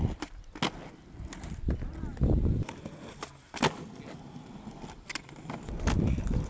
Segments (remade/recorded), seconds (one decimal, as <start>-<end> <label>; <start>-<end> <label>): 0.0-6.5 recorded